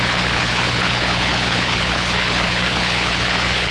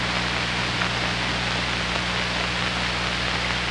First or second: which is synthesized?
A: first